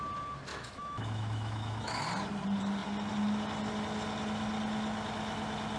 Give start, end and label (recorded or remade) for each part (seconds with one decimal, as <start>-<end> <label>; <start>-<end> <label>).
0.0-0.5 recorded; 0.5-2.0 remade; 2.0-5.8 recorded